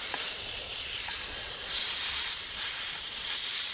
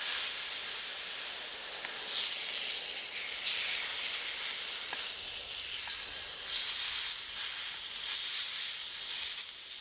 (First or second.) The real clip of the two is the second